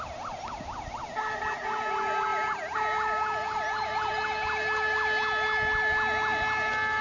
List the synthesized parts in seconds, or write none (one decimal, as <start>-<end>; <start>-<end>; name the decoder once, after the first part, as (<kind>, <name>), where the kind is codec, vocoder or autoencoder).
none